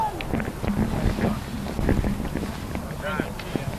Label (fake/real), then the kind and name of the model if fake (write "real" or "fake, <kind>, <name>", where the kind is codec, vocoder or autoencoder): real